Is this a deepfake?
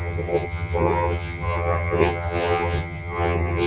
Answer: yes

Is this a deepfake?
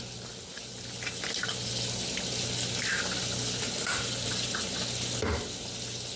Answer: no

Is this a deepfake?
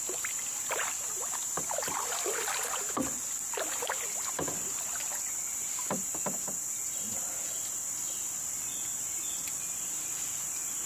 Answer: no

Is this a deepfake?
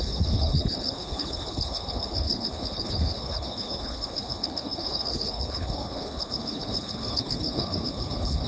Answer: yes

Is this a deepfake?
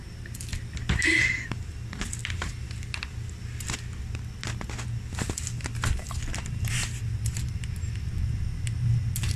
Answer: no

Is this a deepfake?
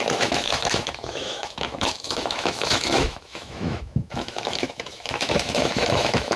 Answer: yes